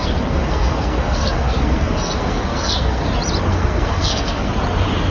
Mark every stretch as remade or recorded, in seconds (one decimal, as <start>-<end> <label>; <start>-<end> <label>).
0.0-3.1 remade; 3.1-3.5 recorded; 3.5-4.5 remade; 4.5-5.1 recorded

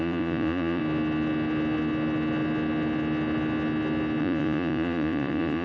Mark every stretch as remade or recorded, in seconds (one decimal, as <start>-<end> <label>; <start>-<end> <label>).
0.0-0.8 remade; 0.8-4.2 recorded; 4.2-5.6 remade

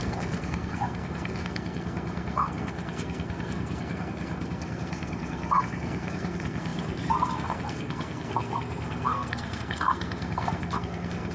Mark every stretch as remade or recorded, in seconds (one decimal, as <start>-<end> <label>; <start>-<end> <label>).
0.0-11.3 remade

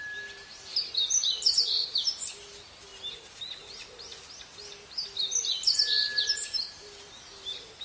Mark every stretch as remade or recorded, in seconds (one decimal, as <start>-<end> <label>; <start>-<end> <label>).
0.0-7.8 recorded

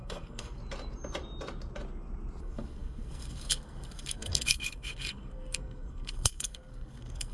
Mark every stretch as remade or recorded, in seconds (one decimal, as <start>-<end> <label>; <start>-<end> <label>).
0.0-0.6 remade; 0.6-2.4 recorded; 2.4-7.3 remade